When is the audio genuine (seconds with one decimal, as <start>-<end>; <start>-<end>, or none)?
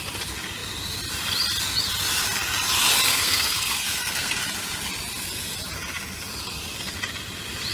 0.0-3.1; 4.4-7.7